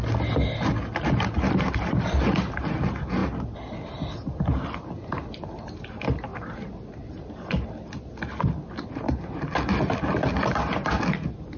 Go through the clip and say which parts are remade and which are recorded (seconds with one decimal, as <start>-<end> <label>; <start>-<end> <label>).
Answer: 0.0-11.6 recorded